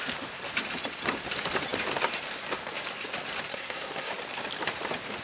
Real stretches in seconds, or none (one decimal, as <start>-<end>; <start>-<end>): 0.0-3.5; 4.1-5.2